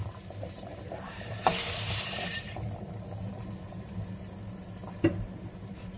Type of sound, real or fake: fake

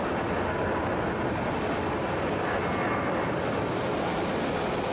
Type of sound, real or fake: real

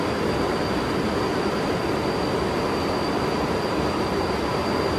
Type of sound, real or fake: real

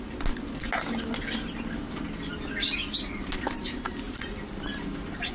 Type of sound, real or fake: real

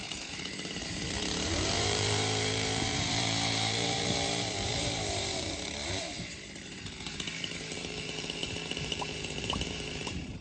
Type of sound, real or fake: fake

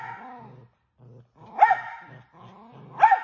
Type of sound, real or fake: real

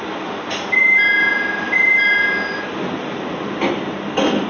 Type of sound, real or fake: real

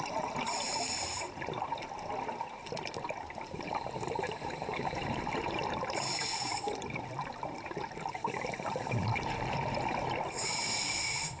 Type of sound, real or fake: fake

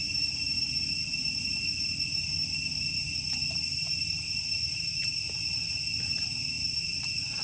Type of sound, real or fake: fake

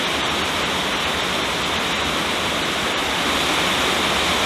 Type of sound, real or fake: real